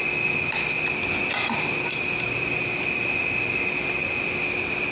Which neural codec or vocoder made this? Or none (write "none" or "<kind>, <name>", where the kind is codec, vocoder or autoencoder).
none